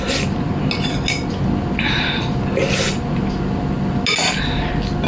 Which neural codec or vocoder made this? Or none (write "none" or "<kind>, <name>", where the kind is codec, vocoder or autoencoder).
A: none